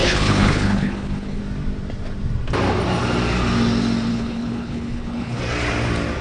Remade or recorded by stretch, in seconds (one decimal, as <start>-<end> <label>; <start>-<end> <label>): 0.0-1.4 remade; 1.4-4.1 recorded; 4.1-5.4 remade; 5.4-6.2 recorded